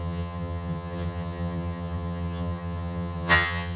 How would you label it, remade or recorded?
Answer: remade